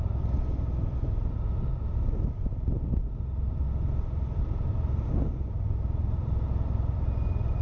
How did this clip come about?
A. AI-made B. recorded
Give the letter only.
B